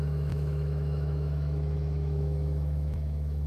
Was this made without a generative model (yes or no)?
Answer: no